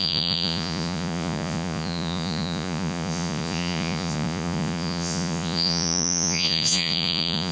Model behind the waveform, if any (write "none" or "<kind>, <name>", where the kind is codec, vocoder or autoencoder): vocoder, Vocos